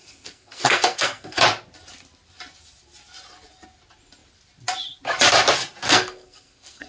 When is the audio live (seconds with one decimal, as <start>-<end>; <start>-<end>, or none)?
1.4-5.8